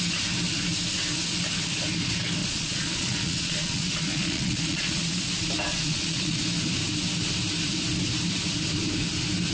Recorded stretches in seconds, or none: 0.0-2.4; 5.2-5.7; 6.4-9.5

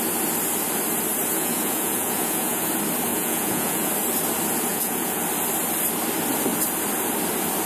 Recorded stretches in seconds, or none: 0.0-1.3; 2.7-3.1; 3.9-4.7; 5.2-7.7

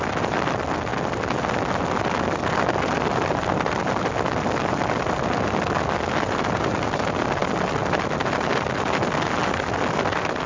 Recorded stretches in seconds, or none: 0.0-10.5

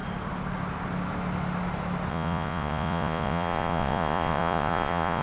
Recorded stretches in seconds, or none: 0.0-2.1

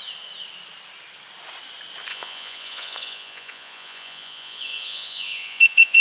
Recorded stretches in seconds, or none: 0.0-2.1

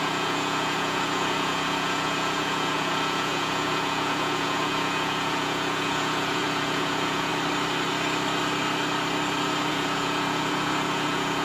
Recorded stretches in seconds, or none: 7.3-9.7

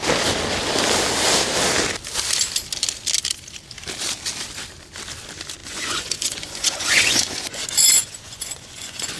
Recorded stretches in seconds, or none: 0.0-5.6; 7.6-8.0

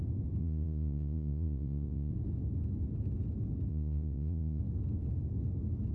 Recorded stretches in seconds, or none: 0.0-0.4; 2.1-3.7; 4.6-5.9